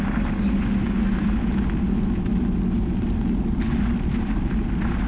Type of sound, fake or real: real